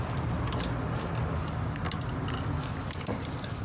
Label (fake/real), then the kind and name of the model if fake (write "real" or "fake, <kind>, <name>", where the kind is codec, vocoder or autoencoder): real